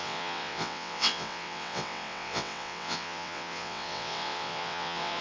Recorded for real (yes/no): no